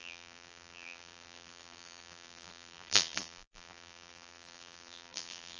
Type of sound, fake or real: fake